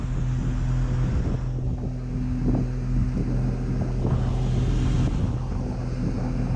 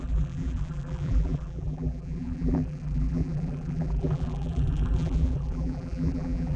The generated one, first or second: second